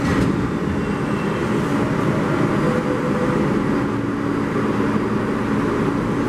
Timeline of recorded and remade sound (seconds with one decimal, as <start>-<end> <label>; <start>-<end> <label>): 0.0-6.3 recorded